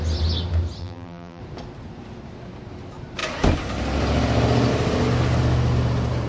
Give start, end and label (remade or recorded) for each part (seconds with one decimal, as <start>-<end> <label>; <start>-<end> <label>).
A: 0.0-0.8 recorded; 0.8-1.4 remade; 1.4-6.3 recorded